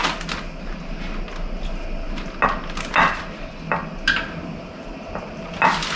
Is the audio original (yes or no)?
yes